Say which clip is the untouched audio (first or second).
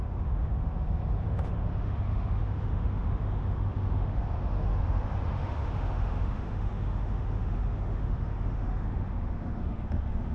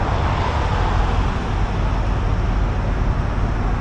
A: second